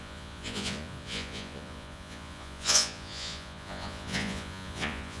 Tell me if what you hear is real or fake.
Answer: fake